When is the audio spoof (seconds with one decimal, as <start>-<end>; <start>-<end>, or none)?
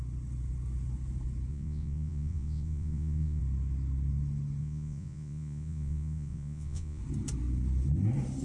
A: 1.5-3.4; 4.6-7.0